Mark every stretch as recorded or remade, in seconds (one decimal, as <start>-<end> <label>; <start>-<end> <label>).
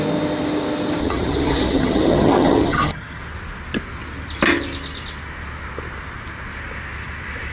0.0-1.0 recorded; 1.0-3.2 remade; 3.2-7.5 recorded